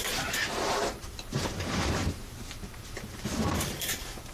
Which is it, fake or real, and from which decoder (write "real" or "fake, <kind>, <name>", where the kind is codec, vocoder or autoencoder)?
fake, vocoder, BigVGAN v2